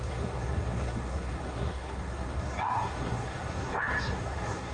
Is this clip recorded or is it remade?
remade